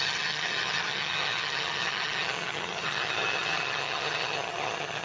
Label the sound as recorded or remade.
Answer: remade